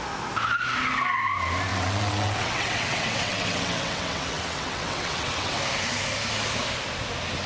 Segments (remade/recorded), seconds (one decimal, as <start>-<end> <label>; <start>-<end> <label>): 0.0-1.7 recorded; 1.7-5.6 remade; 5.6-7.5 recorded